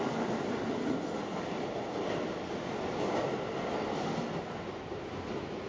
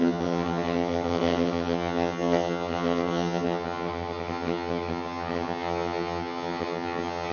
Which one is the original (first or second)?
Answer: first